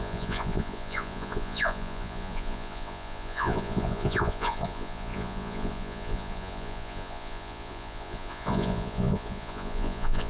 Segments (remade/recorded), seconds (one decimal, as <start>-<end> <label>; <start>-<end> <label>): 0.0-10.3 remade